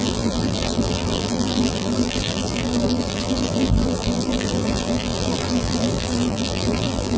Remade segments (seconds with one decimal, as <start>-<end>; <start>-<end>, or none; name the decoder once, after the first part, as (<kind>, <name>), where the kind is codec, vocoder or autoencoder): 0.0-7.2 (vocoder, BigVGAN v2)